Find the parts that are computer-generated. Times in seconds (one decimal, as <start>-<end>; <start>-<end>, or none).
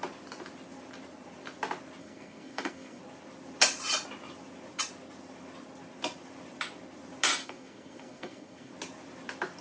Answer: 2.0-3.0; 7.4-8.7